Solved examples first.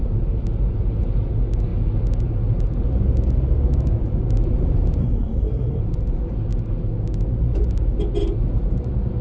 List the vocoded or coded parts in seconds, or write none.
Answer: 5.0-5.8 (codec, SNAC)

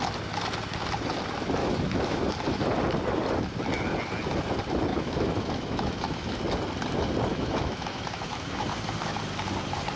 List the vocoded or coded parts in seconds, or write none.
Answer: 1.6-2.2 (autoencoder, DAC-VAE); 4.9-6.4; 7.3-9.2